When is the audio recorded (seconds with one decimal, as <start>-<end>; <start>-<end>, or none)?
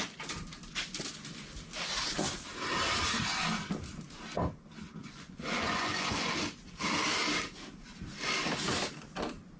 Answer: 0.0-5.0; 6.3-9.6